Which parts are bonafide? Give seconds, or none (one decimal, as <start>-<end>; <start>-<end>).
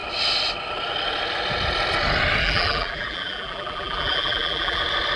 0.0-2.4; 4.8-5.2